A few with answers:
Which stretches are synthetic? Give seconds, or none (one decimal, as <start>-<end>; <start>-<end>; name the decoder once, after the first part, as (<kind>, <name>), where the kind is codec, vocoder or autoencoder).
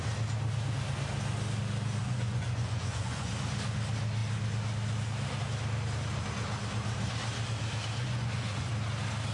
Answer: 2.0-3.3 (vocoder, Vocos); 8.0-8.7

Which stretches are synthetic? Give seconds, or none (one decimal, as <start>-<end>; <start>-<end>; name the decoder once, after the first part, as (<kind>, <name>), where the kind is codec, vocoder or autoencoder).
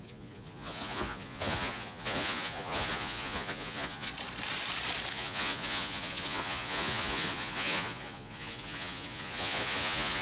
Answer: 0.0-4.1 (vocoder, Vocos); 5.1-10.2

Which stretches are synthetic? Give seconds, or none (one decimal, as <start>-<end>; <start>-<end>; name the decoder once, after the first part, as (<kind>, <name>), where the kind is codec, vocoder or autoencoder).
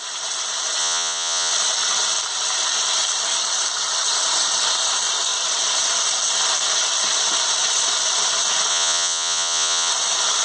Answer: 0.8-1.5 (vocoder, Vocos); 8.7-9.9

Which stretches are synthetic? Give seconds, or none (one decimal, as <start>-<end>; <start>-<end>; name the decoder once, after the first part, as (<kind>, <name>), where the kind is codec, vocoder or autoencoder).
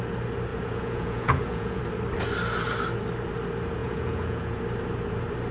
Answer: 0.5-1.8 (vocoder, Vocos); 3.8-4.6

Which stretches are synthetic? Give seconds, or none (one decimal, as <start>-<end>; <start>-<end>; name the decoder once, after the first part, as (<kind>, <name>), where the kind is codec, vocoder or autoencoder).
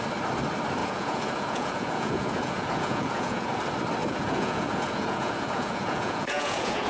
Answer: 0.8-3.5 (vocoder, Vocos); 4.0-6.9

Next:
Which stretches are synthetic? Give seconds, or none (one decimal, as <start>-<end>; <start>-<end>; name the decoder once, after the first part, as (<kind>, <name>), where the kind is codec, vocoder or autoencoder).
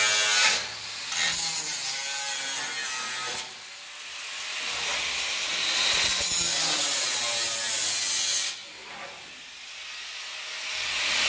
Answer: none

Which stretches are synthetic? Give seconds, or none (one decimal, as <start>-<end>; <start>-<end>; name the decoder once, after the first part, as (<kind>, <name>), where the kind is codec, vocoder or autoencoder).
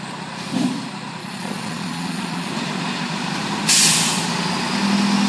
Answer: 1.2-2.5 (vocoder, Vocos)